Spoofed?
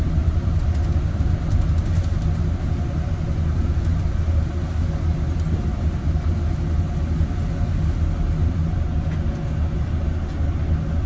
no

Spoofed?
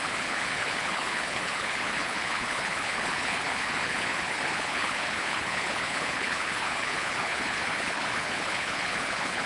yes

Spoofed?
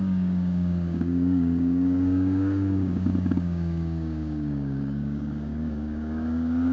yes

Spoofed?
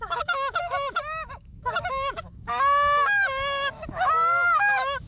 yes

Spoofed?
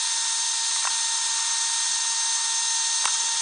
no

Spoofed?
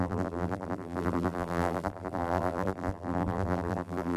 yes